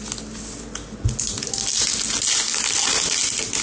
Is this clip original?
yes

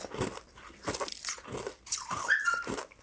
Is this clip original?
yes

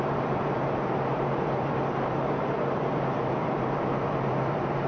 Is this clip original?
no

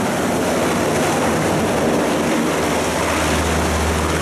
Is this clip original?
yes